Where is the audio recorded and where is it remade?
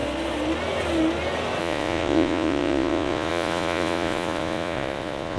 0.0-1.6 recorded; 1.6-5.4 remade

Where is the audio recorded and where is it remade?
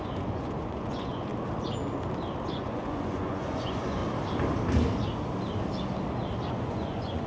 0.0-1.3 remade; 1.3-2.5 recorded; 2.5-4.0 remade; 4.0-6.5 recorded; 6.5-7.3 remade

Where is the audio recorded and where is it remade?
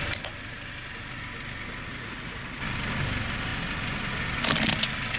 0.0-1.9 recorded; 1.9-2.6 remade; 2.6-5.2 recorded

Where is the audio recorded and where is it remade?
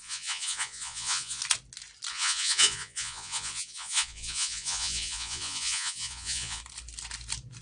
0.0-1.4 remade; 1.4-2.1 recorded; 2.1-6.6 remade; 6.6-7.6 recorded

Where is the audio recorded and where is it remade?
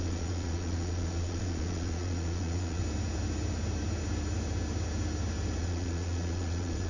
0.0-2.8 remade; 2.8-5.6 recorded; 5.6-6.9 remade